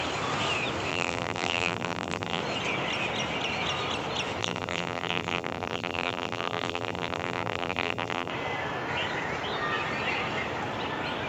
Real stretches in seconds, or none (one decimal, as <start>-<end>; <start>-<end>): 0.0-0.9; 2.4-4.4; 8.3-11.3